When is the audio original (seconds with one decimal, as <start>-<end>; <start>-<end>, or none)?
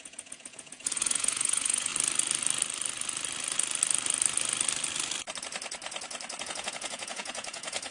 1.9-6.4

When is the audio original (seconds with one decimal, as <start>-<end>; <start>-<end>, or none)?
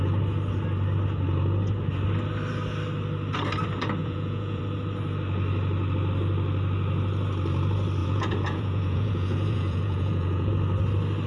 0.0-4.0; 4.6-8.0; 10.5-11.3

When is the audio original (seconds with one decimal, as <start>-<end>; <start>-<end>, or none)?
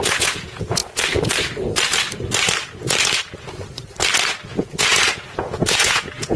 0.8-4.6